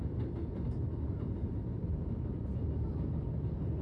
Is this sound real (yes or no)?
yes